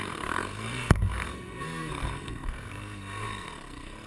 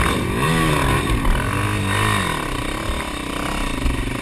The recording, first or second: second